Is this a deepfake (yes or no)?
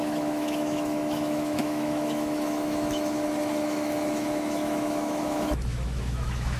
yes